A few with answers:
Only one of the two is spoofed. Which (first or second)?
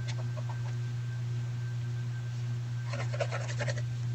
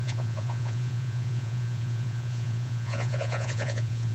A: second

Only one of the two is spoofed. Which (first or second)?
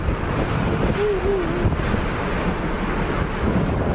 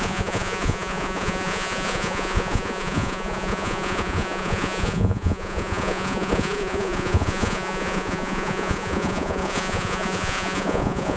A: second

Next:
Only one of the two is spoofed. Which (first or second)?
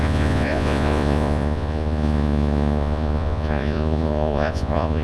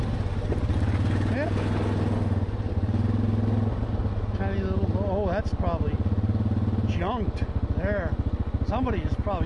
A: first